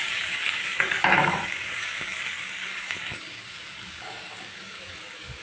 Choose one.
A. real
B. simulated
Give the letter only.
B